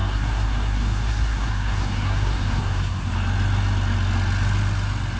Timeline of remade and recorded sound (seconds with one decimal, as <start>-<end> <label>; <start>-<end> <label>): 0.0-3.1 remade; 3.1-5.2 recorded